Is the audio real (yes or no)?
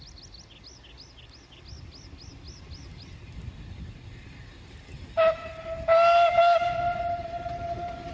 yes